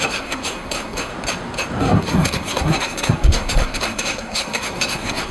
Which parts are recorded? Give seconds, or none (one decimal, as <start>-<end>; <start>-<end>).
1.1-1.8